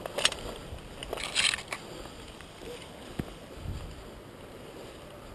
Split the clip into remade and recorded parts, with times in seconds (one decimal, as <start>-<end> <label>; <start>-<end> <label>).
0.0-5.3 recorded